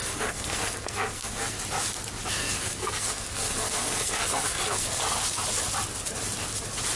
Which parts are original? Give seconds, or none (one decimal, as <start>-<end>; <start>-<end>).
1.6-2.4; 5.4-7.0